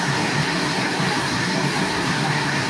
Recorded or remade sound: remade